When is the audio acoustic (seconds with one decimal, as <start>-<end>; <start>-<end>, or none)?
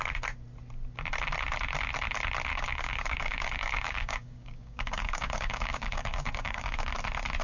0.0-2.5; 6.9-7.4